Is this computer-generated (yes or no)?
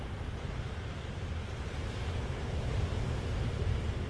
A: no